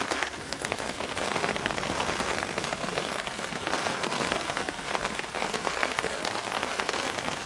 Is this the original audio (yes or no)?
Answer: no